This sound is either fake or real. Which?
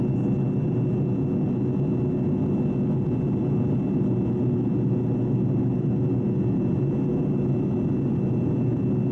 real